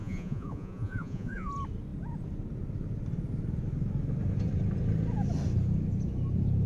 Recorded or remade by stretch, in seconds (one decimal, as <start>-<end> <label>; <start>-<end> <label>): 0.0-1.5 remade; 1.5-6.7 recorded